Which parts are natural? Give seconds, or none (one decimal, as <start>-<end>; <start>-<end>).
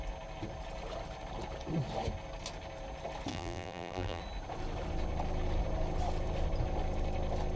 0.0-3.3; 4.2-7.6